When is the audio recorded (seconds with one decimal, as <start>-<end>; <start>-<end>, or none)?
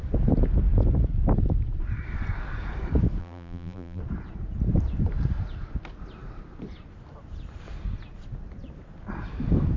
0.0-3.2; 4.0-9.8